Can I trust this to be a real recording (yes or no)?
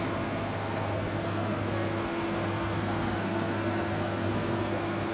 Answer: no